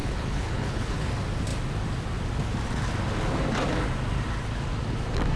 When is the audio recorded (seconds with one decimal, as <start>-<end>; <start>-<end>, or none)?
1.1-5.4